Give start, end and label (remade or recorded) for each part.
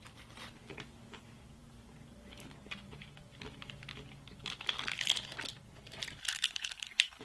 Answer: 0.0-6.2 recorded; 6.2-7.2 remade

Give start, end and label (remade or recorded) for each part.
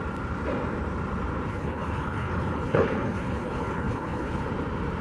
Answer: 0.0-1.5 recorded; 1.5-4.5 remade; 4.5-5.0 recorded